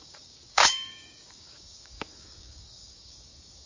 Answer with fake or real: fake